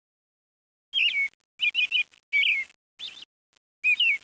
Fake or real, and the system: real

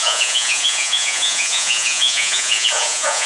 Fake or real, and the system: fake, vocoder, Vocos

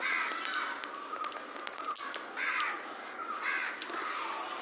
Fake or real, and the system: real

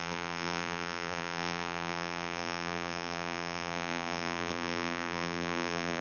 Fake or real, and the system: fake, vocoder, BigVGAN v2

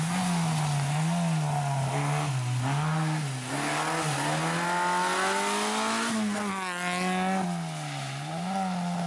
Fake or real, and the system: real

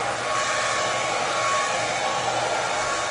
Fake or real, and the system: real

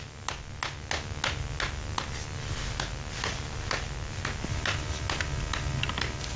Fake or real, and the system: real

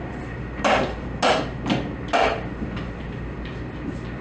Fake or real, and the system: real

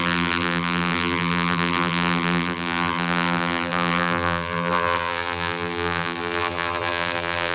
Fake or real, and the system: fake, vocoder, BigVGAN v2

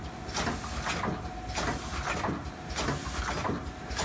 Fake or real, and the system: real